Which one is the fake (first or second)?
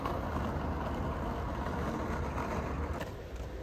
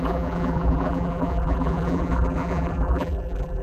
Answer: second